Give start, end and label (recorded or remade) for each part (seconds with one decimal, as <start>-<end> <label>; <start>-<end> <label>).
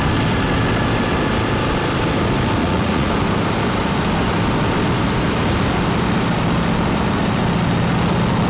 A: 0.0-2.6 recorded; 2.6-3.1 remade; 3.1-8.5 recorded